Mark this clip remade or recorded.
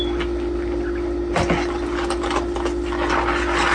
recorded